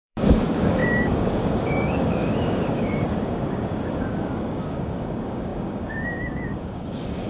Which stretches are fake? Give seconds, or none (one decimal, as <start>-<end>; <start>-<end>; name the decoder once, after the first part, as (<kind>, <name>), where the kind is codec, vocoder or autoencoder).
0.0-7.3 (codec, DAC)